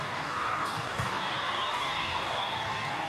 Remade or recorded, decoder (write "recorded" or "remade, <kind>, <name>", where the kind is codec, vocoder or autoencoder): remade, codec, DAC